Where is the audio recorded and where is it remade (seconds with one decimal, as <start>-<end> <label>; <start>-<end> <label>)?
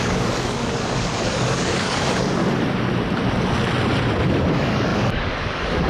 0.0-2.4 remade; 2.4-4.5 recorded; 4.5-5.9 remade